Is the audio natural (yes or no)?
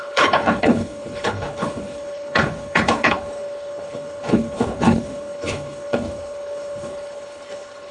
no